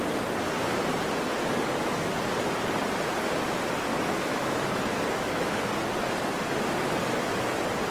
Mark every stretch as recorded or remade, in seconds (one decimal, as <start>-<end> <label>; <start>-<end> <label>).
0.0-3.9 recorded; 3.9-5.6 remade; 5.6-7.9 recorded